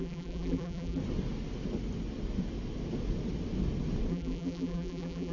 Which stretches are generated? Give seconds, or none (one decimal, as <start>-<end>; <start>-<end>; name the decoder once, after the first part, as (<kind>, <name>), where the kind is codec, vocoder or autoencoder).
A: 0.0-1.0 (vocoder, BigVGAN v2); 4.1-5.3